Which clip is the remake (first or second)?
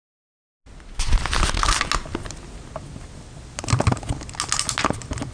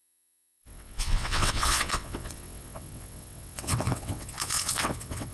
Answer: second